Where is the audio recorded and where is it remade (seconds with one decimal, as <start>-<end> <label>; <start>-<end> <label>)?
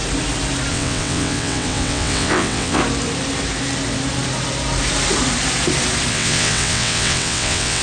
0.0-0.7 recorded; 0.7-2.8 remade; 2.8-6.1 recorded; 6.1-7.8 remade